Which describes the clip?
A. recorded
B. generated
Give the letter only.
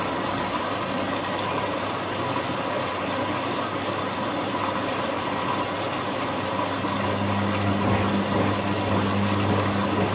A